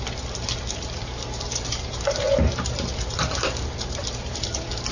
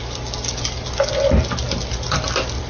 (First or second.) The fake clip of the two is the first